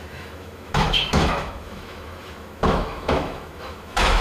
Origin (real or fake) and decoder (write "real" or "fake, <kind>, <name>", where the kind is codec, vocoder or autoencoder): fake, autoencoder, DAC-VAE